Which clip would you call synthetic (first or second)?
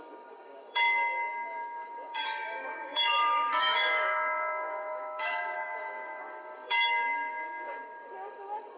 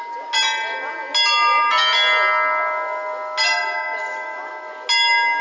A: first